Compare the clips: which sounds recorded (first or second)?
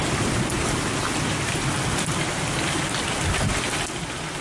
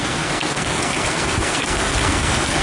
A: first